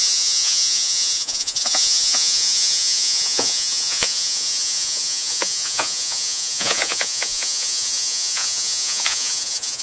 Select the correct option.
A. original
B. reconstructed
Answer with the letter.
B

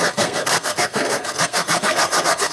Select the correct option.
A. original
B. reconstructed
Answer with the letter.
B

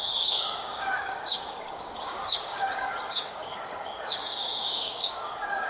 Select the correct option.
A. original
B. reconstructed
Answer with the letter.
B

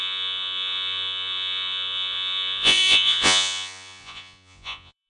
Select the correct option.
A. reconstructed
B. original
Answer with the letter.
A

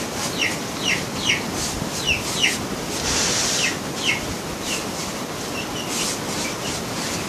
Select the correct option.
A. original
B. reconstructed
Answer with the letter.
A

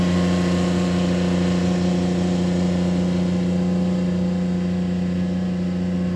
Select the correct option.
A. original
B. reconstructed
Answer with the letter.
A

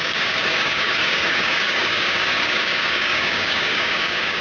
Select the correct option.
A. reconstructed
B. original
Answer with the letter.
A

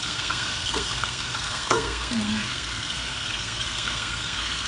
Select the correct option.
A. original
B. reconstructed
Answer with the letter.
B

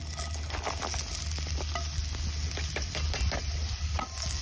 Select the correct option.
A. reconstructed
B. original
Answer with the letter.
B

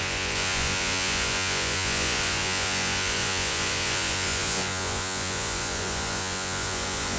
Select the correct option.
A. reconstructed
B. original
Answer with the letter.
A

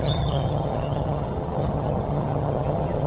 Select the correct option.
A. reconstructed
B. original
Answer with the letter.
A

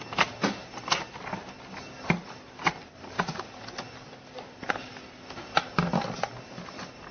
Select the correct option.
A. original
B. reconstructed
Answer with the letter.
A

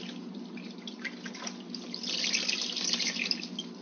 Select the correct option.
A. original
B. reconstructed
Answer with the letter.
A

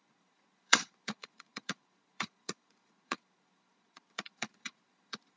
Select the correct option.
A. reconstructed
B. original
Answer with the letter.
A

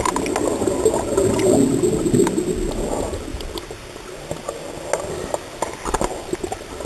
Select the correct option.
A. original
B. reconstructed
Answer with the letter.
A